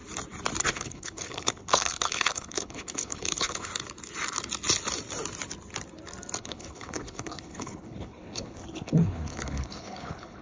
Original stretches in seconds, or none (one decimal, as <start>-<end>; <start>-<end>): 0.0-0.6; 3.7-6.4